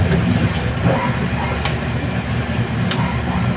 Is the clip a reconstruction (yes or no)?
no